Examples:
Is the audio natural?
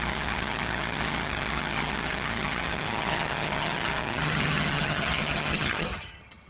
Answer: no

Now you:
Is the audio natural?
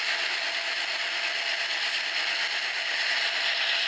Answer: yes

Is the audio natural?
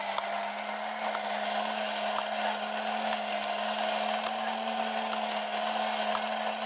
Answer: yes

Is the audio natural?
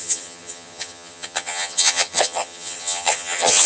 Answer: no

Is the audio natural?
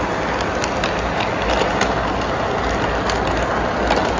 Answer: yes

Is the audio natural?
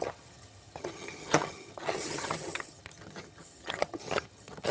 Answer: no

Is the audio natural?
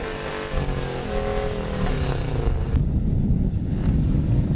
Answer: yes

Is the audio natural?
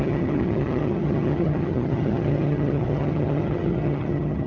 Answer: no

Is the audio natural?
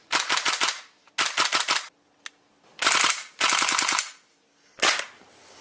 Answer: yes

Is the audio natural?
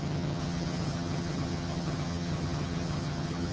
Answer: no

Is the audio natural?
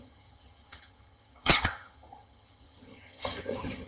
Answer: no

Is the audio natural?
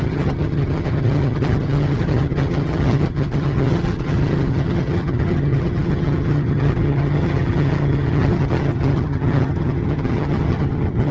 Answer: no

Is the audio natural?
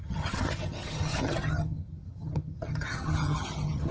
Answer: no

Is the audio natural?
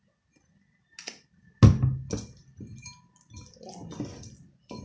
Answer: yes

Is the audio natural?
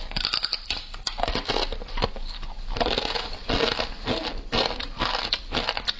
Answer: yes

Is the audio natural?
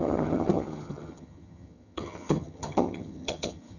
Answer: no